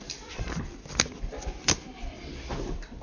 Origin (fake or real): fake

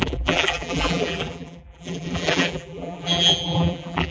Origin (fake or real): fake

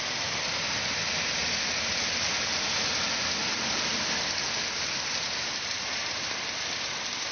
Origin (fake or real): real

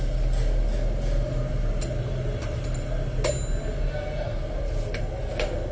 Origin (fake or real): real